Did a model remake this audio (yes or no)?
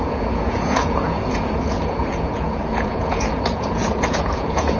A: yes